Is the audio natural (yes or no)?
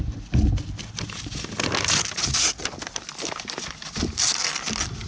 yes